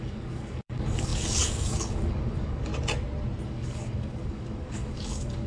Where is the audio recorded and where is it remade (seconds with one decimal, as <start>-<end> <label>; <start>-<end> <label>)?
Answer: 0.0-2.7 remade; 2.7-3.5 recorded; 3.5-5.5 remade